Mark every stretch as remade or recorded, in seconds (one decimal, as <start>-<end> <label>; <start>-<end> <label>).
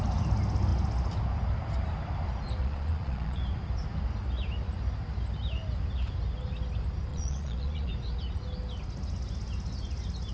0.0-2.6 recorded; 2.6-3.4 remade; 3.4-7.1 recorded; 7.1-7.9 remade; 7.9-10.3 recorded